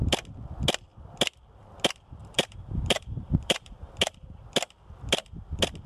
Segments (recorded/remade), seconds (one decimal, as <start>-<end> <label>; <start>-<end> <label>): 0.0-2.2 recorded; 2.2-3.9 remade; 3.9-5.9 recorded